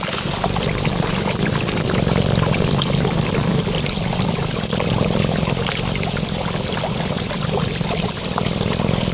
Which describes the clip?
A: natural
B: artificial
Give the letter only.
B